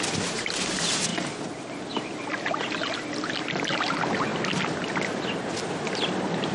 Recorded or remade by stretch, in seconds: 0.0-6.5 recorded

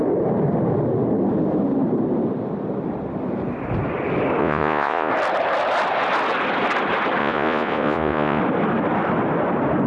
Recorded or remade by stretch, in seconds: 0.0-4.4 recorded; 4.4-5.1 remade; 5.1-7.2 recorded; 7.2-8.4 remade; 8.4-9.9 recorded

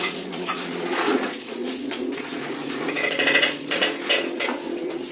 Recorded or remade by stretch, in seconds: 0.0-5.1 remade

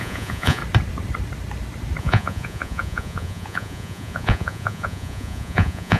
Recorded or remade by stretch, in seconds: 0.0-0.6 remade; 0.6-2.0 recorded; 2.0-6.0 remade

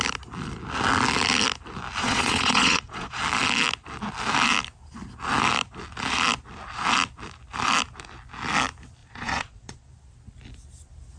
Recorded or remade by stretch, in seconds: 0.0-2.0 recorded; 2.0-3.2 remade; 3.2-9.0 recorded; 9.0-9.9 remade; 9.9-11.2 recorded

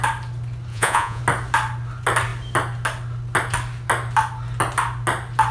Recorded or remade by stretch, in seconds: 0.0-0.7 recorded; 0.7-1.2 remade; 1.2-5.5 recorded

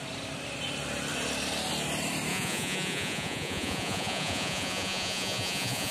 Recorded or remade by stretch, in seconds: 0.0-2.3 recorded; 2.3-5.9 remade

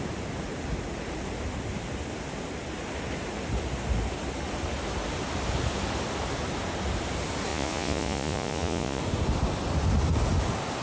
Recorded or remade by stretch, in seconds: 0.0-7.5 recorded; 7.5-9.0 remade; 9.0-10.8 recorded